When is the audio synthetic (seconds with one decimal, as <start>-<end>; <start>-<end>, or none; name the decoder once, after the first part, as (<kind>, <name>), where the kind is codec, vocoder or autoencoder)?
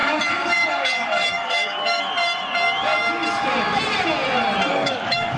0.0-2.0 (codec, DAC); 4.7-5.4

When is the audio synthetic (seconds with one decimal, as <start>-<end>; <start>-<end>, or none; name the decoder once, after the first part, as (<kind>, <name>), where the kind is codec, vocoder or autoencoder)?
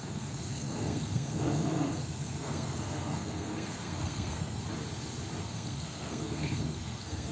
0.0-4.6 (codec, SNAC); 5.4-7.3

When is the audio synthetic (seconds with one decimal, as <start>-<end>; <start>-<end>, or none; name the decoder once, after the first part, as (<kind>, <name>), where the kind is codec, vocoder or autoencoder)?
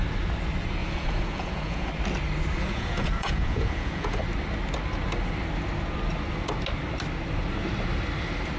0.8-1.9 (vocoder, Vocos); 2.6-4.2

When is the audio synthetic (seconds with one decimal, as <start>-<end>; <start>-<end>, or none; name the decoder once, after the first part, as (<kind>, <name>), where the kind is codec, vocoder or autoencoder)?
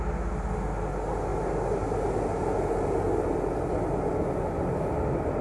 none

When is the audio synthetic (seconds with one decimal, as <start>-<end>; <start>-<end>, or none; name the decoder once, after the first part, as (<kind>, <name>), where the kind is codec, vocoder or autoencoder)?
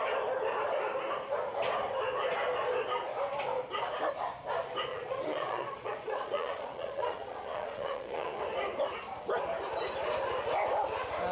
4.9-8.4 (vocoder, Vocos)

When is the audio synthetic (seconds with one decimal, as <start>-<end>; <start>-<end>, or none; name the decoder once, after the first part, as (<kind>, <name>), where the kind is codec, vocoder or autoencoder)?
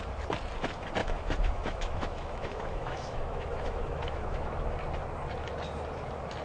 1.0-4.7 (autoencoder, DAC-VAE)